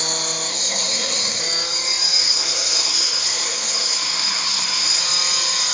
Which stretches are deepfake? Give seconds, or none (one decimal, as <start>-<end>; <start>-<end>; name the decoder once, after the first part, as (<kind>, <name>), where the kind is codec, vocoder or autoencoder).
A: 0.5-1.4 (codec, SNAC); 2.2-5.0